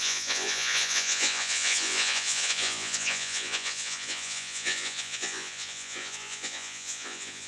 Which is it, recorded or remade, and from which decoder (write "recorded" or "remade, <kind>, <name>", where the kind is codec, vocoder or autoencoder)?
remade, vocoder, Vocos